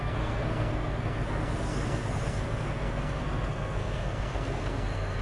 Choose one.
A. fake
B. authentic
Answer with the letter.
A